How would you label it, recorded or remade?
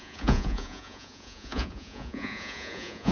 remade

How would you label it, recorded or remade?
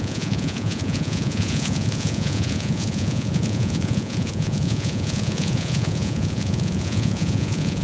remade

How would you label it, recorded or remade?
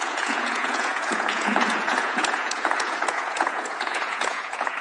remade